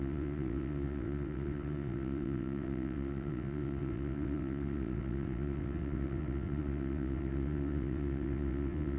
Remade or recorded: remade